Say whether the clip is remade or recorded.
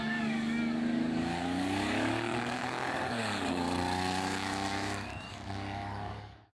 remade